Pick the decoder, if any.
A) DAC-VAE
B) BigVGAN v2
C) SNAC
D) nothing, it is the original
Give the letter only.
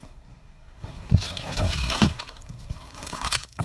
C